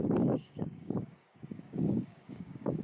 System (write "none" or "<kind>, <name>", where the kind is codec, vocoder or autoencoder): codec, DAC